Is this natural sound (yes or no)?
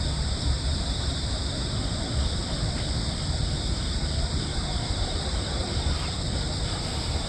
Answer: yes